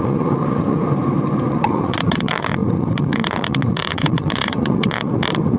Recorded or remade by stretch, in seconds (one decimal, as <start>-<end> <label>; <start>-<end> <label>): 0.0-0.8 remade; 0.8-1.5 recorded; 1.5-5.6 remade